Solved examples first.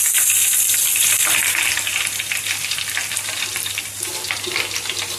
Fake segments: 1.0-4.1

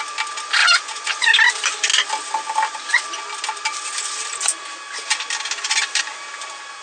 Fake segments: 0.6-1.2

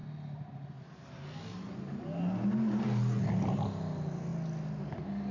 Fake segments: none

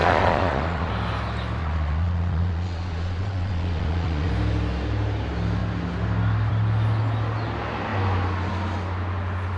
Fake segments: 0.0-0.9; 1.6-4.3